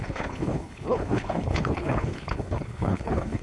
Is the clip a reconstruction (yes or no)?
yes